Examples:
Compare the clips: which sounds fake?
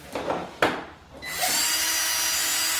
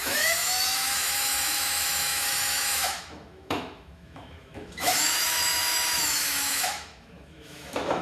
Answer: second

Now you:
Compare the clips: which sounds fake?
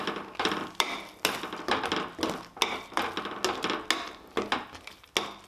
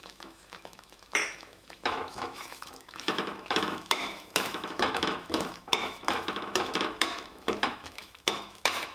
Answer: second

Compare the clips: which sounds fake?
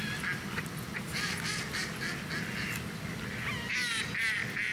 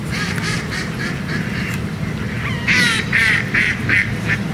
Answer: second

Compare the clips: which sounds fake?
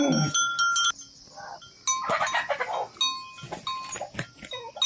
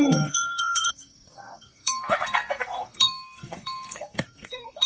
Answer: second